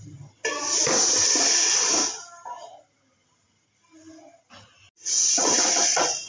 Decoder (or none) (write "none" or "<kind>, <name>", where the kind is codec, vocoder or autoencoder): none